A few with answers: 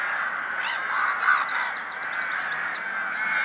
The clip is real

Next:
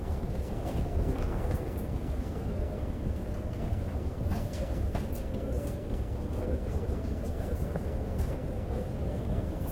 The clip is fake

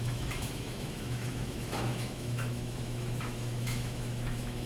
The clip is fake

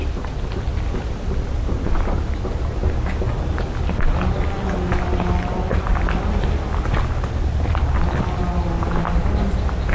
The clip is real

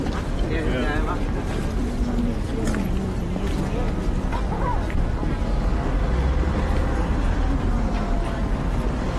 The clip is real